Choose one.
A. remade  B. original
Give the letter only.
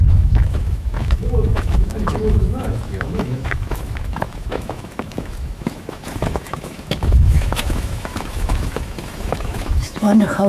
A